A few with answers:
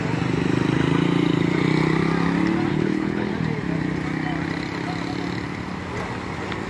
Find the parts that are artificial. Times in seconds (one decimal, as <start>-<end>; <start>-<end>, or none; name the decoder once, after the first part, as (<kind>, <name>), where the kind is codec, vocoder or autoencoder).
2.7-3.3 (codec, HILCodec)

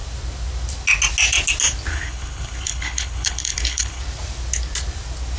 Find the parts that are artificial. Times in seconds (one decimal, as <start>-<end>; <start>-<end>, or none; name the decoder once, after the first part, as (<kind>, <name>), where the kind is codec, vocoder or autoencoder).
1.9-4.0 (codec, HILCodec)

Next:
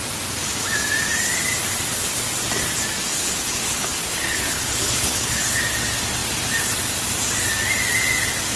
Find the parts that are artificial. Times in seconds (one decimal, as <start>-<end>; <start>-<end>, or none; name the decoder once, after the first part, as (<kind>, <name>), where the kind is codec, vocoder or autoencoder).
3.1-5.6 (codec, HILCodec)